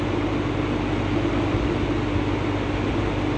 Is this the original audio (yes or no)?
yes